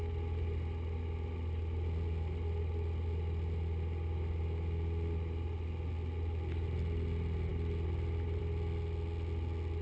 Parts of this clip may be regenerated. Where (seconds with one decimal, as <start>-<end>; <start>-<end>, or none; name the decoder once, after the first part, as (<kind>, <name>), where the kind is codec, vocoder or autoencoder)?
none